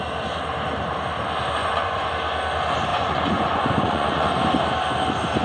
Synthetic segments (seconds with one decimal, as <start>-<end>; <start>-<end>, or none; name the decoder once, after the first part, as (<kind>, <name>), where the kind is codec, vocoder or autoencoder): 1.6-2.1 (vocoder, Vocos); 2.9-4.3